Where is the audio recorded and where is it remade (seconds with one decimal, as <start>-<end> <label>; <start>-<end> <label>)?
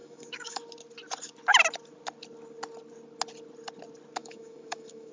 0.0-0.6 remade; 0.6-4.2 recorded; 4.2-5.1 remade